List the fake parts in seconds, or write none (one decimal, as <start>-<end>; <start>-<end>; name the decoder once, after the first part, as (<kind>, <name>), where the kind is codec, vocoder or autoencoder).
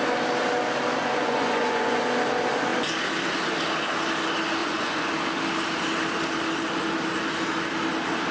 1.0-2.0 (vocoder, Vocos); 4.6-5.1